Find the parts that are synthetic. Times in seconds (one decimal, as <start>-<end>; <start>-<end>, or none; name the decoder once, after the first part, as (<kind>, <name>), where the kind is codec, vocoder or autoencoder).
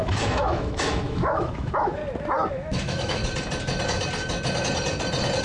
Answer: 0.0-2.0 (autoencoder, DAC-VAE); 2.5-3.2